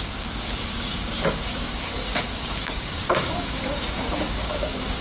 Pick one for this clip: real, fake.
fake